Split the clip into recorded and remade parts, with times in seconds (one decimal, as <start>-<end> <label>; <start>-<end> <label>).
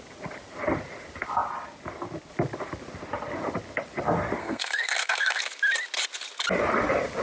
0.0-4.4 recorded; 4.4-5.4 remade; 5.4-7.2 recorded